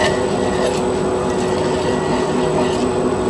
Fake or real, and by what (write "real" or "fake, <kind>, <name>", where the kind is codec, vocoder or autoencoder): real